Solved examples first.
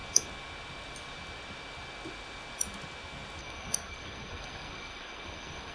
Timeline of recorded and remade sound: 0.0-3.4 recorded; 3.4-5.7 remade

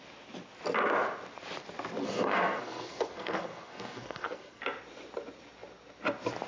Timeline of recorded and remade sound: 0.0-2.0 recorded; 2.0-4.6 remade; 4.6-6.5 recorded

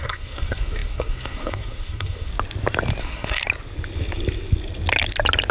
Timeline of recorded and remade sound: 0.0-2.3 remade; 2.3-3.0 recorded; 3.0-3.4 remade; 3.4-5.5 recorded

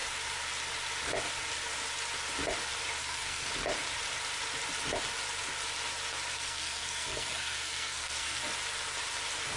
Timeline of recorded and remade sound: 0.0-3.0 recorded; 3.0-3.5 remade; 3.5-6.3 recorded; 6.3-8.4 remade; 8.4-9.6 recorded

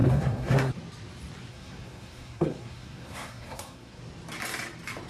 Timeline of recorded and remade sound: 0.0-0.7 remade; 0.7-1.5 recorded; 1.5-4.0 remade; 4.0-5.1 recorded

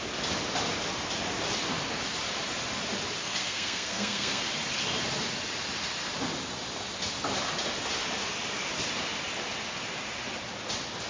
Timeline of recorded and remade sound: 0.0-3.2 recorded; 3.2-4.4 remade; 4.4-11.1 recorded

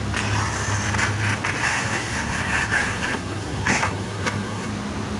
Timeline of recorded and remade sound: 0.0-1.6 recorded; 1.6-4.7 remade; 4.7-5.2 recorded